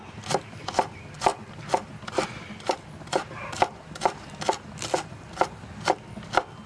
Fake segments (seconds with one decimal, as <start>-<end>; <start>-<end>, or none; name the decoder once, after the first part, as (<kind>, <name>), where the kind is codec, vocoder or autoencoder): none